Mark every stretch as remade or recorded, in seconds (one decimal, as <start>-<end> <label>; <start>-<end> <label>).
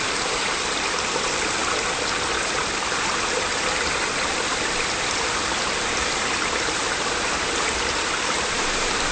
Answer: 0.0-9.1 recorded